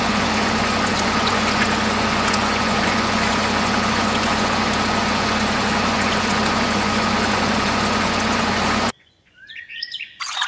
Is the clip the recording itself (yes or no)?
no